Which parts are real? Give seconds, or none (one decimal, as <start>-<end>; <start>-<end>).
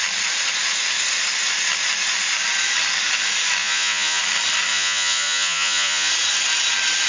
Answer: 0.0-3.6; 4.2-4.7; 6.1-7.1